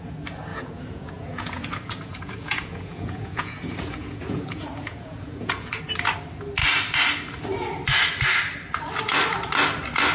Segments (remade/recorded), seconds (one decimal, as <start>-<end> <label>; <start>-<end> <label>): 0.0-0.5 recorded; 0.5-5.8 remade; 5.8-10.1 recorded